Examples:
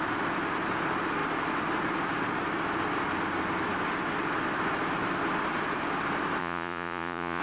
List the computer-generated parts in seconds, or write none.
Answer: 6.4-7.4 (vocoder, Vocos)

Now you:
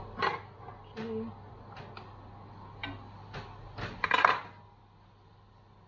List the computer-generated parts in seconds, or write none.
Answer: none

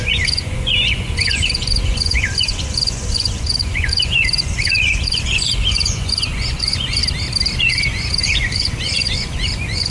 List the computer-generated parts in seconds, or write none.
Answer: 0.0-7.0 (vocoder, Vocos); 7.6-9.9

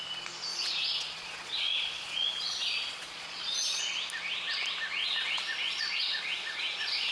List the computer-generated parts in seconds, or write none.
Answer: 0.5-3.8 (vocoder, Vocos); 5.0-7.1